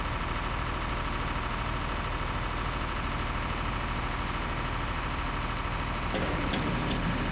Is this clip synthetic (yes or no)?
no